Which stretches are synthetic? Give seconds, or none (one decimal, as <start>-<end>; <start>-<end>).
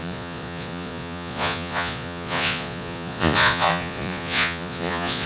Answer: 0.0-5.3